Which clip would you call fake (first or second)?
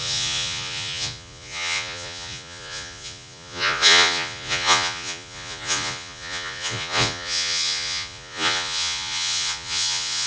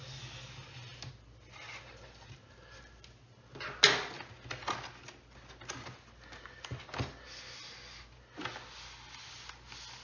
first